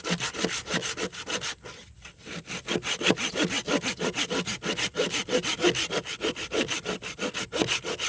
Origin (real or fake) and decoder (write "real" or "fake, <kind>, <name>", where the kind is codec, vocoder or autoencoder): real